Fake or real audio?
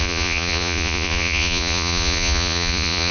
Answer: fake